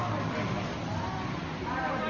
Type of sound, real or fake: real